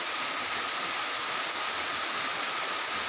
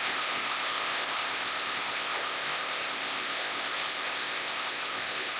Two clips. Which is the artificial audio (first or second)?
second